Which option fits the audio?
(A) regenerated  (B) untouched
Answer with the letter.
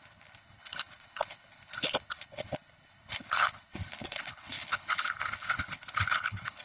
A